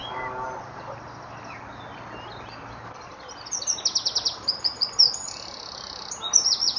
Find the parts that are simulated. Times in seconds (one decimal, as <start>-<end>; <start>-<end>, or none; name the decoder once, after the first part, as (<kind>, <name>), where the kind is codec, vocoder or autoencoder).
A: 3.7-6.8 (vocoder, BigVGAN v2)